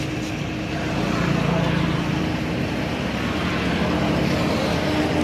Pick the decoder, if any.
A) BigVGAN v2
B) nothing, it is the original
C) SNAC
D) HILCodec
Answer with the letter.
A